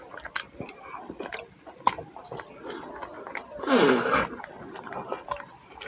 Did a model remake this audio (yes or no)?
no